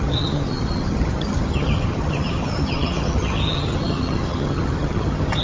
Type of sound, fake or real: fake